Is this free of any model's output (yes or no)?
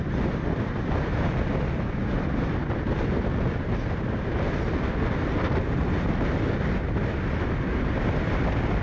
yes